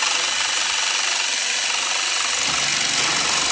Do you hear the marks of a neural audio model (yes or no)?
no